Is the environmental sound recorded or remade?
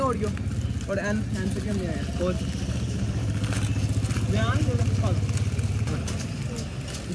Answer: recorded